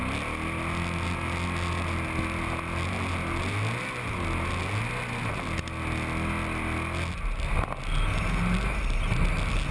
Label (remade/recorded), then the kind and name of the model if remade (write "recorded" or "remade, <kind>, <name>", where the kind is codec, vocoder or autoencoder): recorded